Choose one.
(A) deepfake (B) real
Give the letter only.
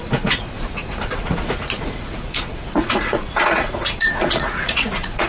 A